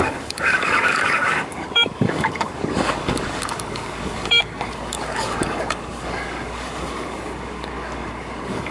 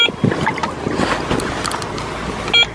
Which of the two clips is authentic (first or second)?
second